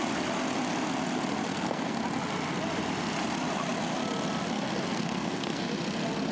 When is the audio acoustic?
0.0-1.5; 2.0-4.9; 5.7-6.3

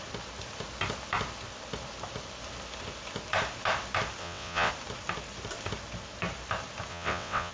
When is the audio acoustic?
0.0-4.2; 4.7-6.9

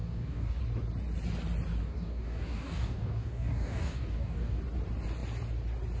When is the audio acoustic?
0.6-1.8; 4.6-6.0

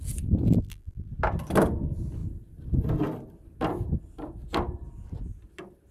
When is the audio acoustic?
0.0-0.4; 1.1-5.9

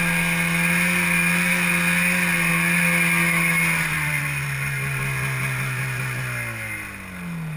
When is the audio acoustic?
0.0-7.6